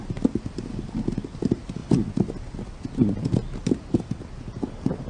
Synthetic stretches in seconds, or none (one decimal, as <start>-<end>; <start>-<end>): none